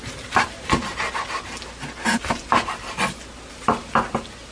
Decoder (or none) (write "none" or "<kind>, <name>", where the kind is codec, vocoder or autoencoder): none